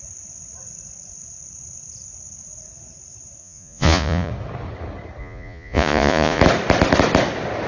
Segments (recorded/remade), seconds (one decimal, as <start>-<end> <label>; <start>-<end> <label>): 0.0-3.4 recorded; 3.4-4.3 remade; 4.3-5.2 recorded; 5.2-6.4 remade; 6.4-7.7 recorded